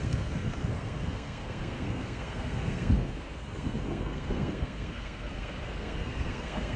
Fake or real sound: fake